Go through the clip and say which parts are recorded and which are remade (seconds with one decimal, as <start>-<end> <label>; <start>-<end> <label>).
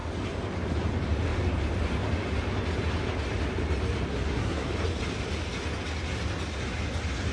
0.0-4.1 recorded; 4.1-4.7 remade; 4.7-7.3 recorded